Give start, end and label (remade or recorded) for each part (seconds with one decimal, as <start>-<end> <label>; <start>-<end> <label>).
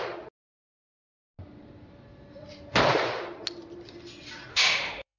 0.0-4.5 recorded; 4.5-5.2 remade